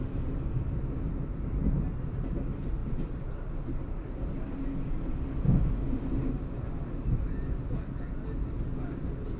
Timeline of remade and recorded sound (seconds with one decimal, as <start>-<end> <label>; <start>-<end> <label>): 0.0-9.4 recorded